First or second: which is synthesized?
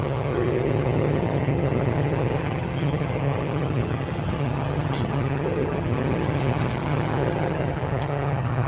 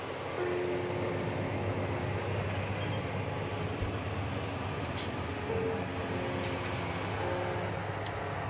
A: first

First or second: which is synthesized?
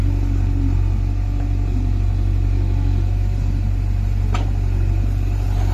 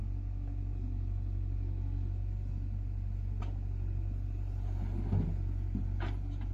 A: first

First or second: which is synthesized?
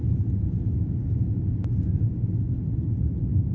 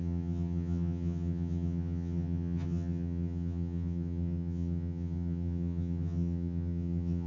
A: second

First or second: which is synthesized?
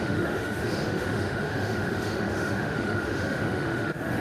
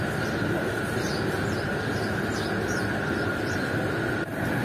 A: first